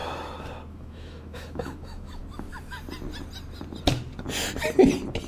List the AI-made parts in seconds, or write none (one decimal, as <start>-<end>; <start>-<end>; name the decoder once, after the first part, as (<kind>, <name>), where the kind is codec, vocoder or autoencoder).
0.7-2.2 (autoencoder, DAC-VAE)